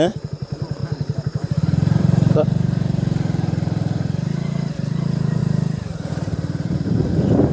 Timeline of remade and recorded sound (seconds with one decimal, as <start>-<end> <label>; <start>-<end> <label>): 0.0-5.4 remade; 5.4-6.1 recorded; 6.1-7.5 remade